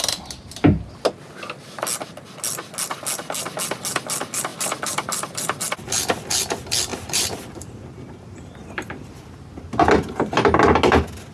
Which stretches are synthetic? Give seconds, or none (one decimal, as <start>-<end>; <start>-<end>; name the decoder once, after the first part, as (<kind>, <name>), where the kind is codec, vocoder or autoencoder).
4.5-5.6 (vocoder, BigVGAN v2); 6.9-7.5